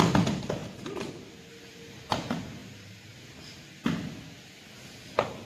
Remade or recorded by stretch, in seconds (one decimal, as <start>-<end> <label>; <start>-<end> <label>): 0.0-2.6 recorded; 2.6-3.3 remade; 3.3-5.4 recorded